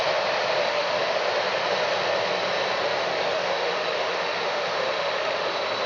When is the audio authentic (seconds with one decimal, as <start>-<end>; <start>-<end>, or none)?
0.0-0.6; 1.2-3.1; 5.5-5.9